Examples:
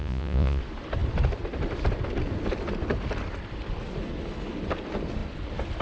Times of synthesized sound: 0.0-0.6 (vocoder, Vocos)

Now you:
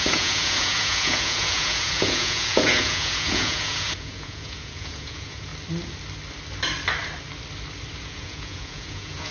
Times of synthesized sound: 0.0-5.5 (vocoder, Vocos); 8.0-9.3

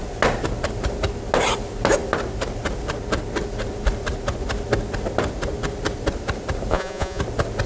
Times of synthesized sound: 6.7-7.2 (vocoder, Vocos)

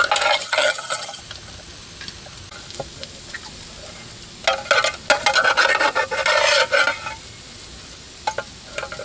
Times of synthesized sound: 0.4-1.2 (vocoder, HiFi-GAN)

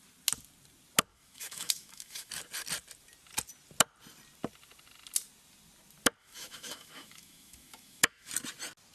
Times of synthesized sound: 1.1-2.3 (autoencoder, DAC-VAE); 6.2-8.3